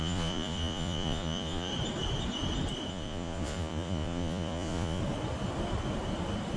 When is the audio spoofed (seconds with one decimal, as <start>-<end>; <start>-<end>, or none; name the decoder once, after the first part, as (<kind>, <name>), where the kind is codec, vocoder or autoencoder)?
0.0-1.7 (vocoder, Vocos); 2.9-5.0